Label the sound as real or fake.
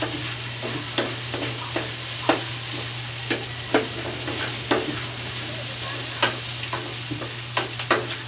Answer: real